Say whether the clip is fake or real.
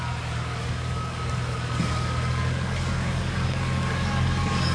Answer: fake